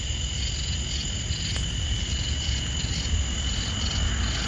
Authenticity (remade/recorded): recorded